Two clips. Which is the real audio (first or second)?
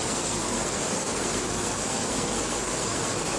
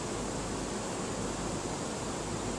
second